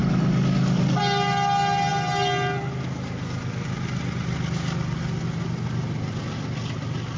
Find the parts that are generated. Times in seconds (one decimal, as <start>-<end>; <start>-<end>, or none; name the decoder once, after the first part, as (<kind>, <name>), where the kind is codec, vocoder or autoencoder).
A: 0.0-1.0 (codec, DAC)